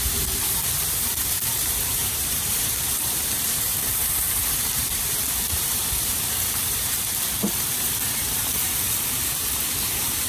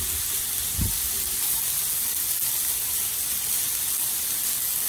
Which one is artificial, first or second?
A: first